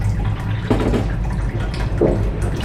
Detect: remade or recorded recorded